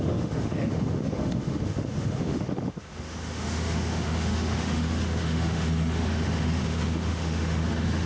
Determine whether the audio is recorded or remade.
remade